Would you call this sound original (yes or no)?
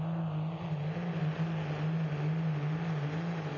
yes